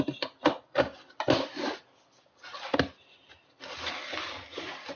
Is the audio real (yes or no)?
yes